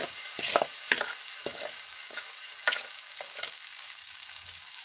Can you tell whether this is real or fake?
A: fake